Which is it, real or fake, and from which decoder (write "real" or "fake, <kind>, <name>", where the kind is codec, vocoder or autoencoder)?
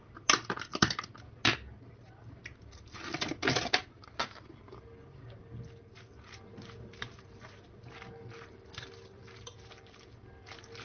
real